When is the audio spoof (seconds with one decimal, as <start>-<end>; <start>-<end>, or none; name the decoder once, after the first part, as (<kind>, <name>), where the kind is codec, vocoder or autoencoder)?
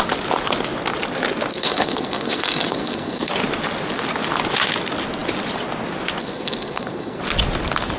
1.5-3.3 (codec, SNAC); 6.2-7.2